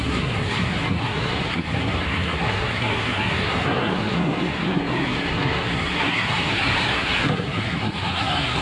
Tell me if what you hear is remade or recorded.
remade